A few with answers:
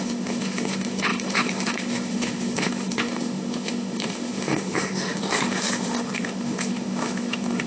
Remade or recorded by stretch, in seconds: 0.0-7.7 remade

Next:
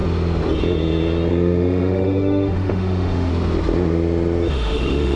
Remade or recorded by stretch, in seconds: 0.0-1.3 recorded; 1.3-3.3 remade; 3.3-4.5 recorded; 4.5-5.2 remade

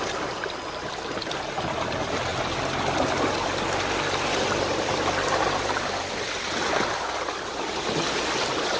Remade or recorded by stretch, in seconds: 0.0-8.8 recorded

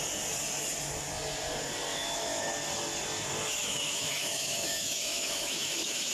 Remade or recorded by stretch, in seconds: 0.0-1.9 recorded; 1.9-2.4 remade; 2.4-3.6 recorded; 3.6-6.1 remade

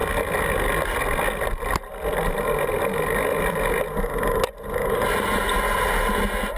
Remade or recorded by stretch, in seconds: 0.0-6.6 recorded

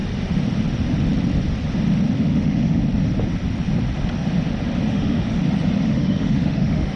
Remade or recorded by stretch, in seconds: 0.0-2.2 recorded; 2.2-2.8 remade; 2.8-4.9 recorded; 4.9-5.4 remade; 5.4-5.9 recorded; 5.9-7.0 remade

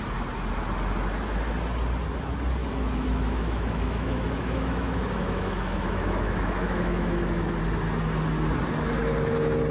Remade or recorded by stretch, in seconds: 0.0-2.6 recorded; 2.6-7.6 remade; 7.6-9.7 recorded

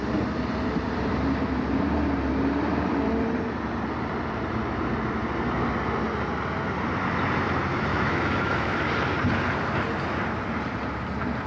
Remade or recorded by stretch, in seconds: 0.0-7.9 recorded; 7.9-8.8 remade; 8.8-11.5 recorded